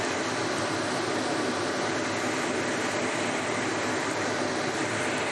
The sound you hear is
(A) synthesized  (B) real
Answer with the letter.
B